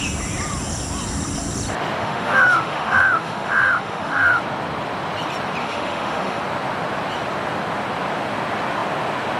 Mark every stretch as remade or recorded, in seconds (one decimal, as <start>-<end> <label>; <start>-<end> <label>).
0.0-2.0 recorded; 2.0-4.4 remade; 4.4-5.6 recorded; 5.6-6.4 remade; 6.4-9.4 recorded